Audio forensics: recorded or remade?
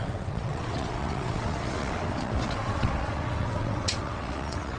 remade